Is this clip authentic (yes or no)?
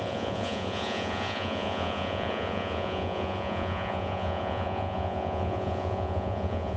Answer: no